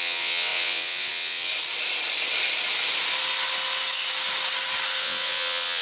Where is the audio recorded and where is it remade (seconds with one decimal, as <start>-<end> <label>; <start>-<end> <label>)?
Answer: 0.0-1.5 remade; 1.5-5.0 recorded; 5.0-5.8 remade